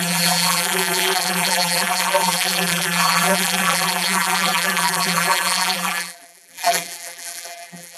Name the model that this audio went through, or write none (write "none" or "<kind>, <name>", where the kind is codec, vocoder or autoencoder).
vocoder, BigVGAN v2